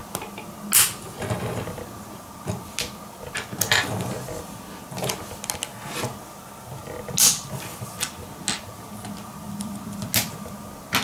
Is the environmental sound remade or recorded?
recorded